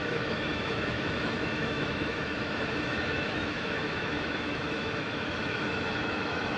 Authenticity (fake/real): fake